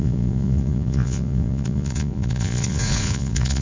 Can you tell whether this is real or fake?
fake